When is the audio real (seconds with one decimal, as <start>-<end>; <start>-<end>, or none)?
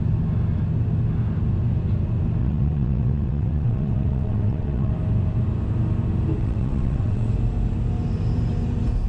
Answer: 0.0-2.4; 4.9-6.4; 7.3-9.1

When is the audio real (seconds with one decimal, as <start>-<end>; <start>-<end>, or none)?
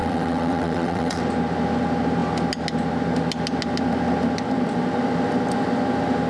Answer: 1.2-6.3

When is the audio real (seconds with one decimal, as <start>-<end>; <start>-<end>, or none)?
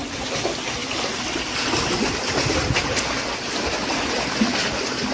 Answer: 0.0-5.1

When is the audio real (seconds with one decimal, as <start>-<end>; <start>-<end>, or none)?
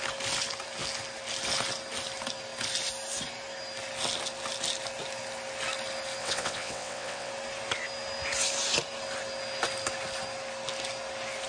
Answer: 0.0-6.2; 7.3-11.5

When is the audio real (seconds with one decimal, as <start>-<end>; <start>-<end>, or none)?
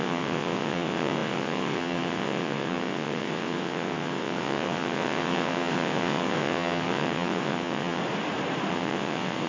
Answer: 8.0-8.7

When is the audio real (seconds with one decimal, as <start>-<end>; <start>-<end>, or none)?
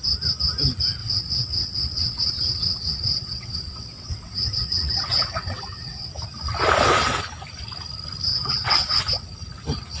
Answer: 0.0-1.0; 6.1-8.3; 9.0-10.0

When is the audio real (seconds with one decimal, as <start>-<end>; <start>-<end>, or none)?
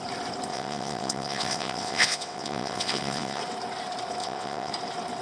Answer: 0.0-0.5; 3.4-4.2; 4.7-5.2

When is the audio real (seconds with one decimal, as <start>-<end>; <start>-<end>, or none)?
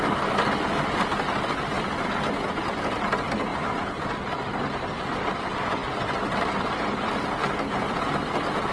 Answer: 0.0-8.7